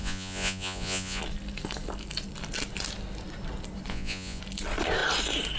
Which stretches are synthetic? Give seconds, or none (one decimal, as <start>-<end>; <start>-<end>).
0.0-1.2; 3.9-4.4